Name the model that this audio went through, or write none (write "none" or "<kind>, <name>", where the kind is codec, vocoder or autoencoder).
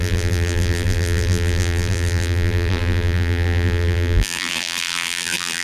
vocoder, BigVGAN v2